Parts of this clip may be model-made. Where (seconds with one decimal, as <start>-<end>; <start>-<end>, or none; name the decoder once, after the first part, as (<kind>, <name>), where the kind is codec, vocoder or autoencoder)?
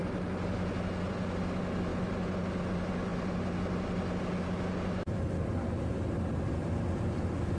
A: none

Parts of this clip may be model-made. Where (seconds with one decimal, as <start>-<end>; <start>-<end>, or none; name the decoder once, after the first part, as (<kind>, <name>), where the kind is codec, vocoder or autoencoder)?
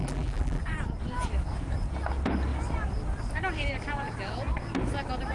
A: 0.0-0.6 (vocoder, BigVGAN v2)